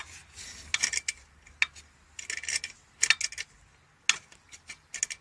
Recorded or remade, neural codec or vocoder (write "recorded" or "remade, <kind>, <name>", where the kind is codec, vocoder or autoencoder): recorded